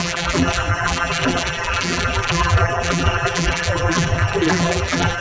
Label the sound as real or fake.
fake